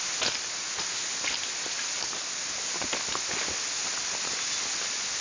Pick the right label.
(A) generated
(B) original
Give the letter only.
B